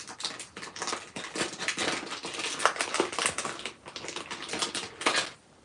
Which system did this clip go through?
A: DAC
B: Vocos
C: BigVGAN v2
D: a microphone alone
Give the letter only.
D